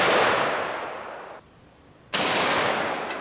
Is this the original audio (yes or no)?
yes